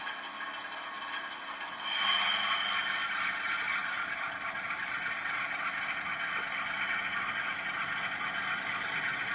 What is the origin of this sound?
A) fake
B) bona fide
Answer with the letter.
B